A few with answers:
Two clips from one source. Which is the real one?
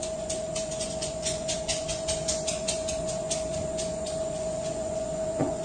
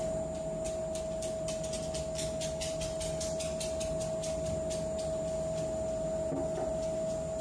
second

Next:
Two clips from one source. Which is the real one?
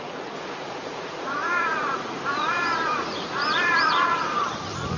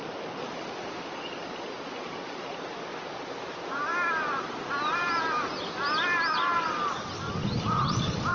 second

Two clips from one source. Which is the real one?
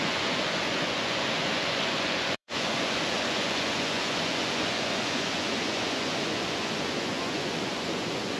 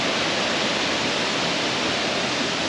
second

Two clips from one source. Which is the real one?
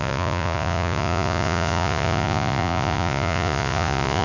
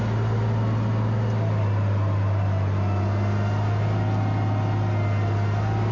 second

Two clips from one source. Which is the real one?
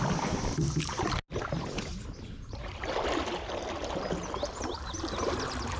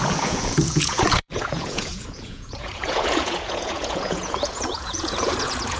first